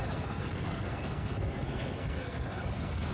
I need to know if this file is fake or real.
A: fake